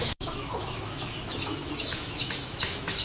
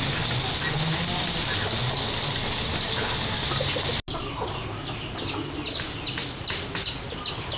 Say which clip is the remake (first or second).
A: first